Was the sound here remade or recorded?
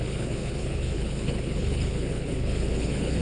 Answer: remade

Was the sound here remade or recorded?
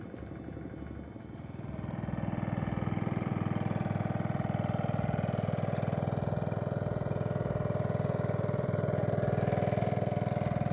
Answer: recorded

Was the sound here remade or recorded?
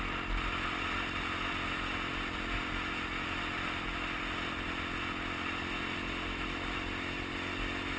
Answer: recorded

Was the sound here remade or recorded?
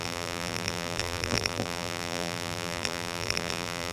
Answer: remade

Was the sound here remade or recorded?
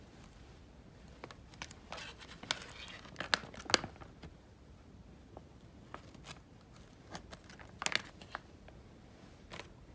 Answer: recorded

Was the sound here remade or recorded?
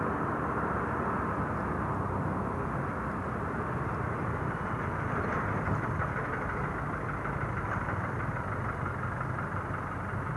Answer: recorded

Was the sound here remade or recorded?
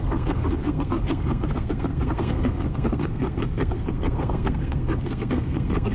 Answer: remade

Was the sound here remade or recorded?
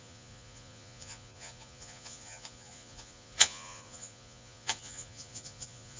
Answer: remade